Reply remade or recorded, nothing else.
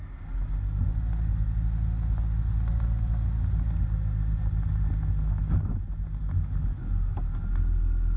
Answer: recorded